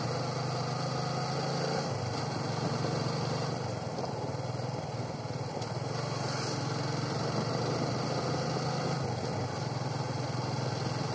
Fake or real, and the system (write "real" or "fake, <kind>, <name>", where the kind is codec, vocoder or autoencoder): real